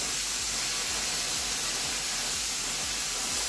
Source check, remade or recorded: recorded